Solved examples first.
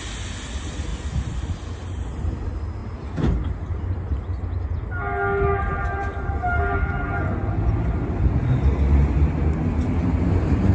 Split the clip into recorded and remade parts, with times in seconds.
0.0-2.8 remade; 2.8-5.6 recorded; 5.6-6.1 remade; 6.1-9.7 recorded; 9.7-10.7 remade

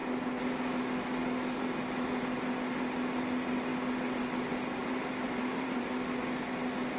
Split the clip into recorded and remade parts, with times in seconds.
0.0-4.8 recorded; 4.8-5.8 remade; 5.8-7.0 recorded

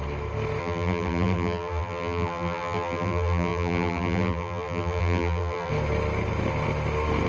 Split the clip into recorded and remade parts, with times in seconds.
0.0-0.6 recorded; 0.6-5.7 remade; 5.7-7.3 recorded

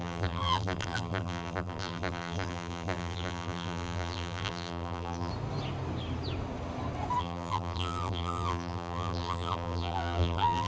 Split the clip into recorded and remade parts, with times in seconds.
0.0-5.3 remade; 5.3-7.2 recorded; 7.2-10.7 remade

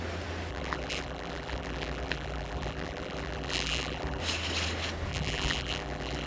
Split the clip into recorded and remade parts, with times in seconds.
0.0-0.5 recorded; 0.5-4.2 remade; 4.2-5.1 recorded; 5.1-6.3 remade

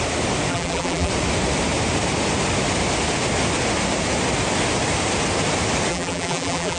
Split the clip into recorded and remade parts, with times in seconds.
0.0-0.5 recorded; 0.5-1.1 remade; 1.1-5.9 recorded; 5.9-6.8 remade